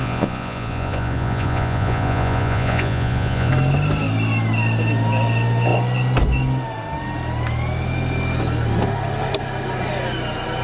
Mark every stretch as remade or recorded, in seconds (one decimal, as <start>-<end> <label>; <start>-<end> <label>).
0.0-3.5 remade; 3.5-10.6 recorded

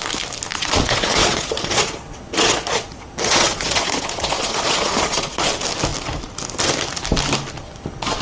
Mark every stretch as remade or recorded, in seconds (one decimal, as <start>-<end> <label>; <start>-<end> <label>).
0.0-0.5 recorded; 0.5-5.4 remade; 5.4-8.2 recorded

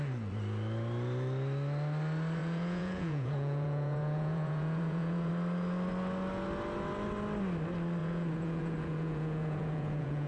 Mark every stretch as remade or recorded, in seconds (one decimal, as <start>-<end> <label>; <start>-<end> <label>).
0.0-2.4 recorded; 2.4-5.3 remade; 5.3-8.0 recorded; 8.0-10.3 remade

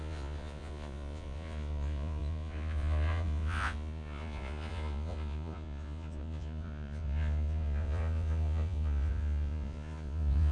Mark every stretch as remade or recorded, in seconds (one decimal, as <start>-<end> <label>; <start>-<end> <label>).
0.0-10.5 remade